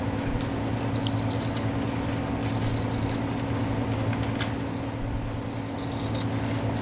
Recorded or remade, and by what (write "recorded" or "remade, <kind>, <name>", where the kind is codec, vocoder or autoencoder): recorded